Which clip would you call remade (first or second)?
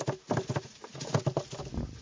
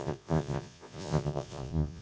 second